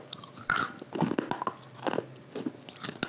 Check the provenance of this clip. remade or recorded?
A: recorded